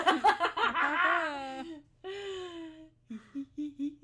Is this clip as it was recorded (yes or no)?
yes